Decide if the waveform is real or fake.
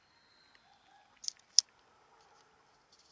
real